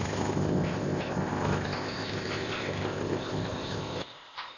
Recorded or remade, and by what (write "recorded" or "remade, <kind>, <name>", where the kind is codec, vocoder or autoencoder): remade, codec, ZipCodec